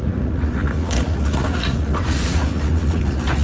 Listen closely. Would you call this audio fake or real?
fake